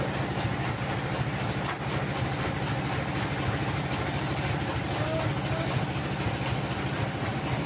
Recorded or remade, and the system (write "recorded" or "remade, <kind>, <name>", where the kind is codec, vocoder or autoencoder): recorded